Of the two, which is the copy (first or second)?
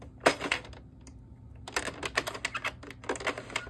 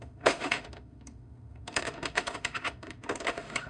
second